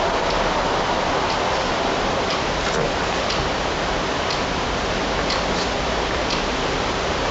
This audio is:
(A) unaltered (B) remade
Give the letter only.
A